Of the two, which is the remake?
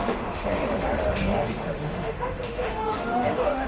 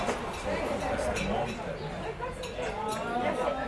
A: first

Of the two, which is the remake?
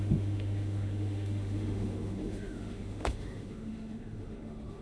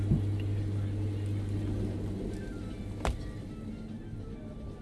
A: first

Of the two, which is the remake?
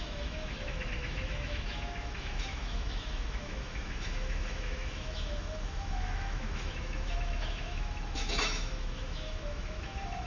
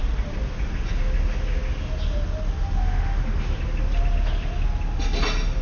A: first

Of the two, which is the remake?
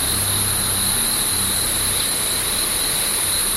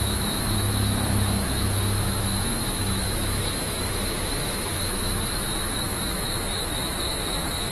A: second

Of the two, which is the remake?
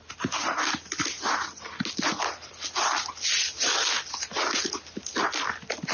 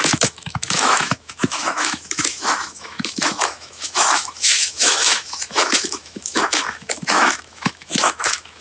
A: second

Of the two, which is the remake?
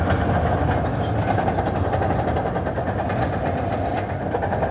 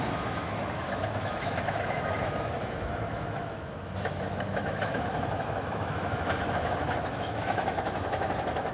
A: second